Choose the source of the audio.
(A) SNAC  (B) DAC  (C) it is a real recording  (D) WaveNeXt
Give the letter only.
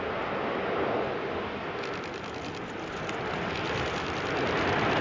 C